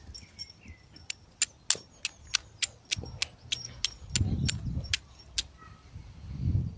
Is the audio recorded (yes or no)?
yes